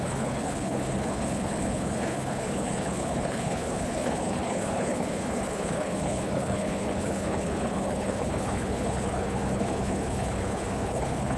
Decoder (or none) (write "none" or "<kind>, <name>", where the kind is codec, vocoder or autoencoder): codec, HILCodec